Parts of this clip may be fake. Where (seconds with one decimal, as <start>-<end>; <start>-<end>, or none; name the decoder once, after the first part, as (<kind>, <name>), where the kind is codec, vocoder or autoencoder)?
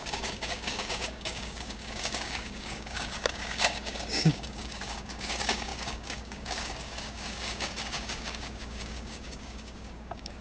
0.0-10.4 (codec, DAC)